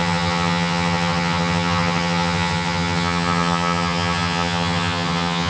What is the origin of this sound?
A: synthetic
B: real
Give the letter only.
A